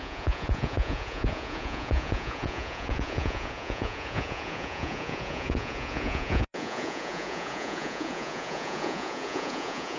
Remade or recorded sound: remade